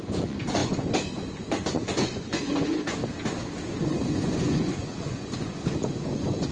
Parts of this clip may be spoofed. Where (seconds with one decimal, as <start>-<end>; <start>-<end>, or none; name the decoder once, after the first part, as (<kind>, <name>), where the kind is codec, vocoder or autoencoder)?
0.0-3.0 (vocoder, Vocos); 3.7-6.5